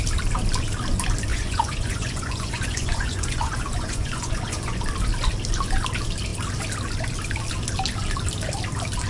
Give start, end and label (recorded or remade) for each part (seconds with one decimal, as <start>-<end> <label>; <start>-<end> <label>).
0.0-1.3 recorded; 1.3-4.8 remade; 4.8-9.1 recorded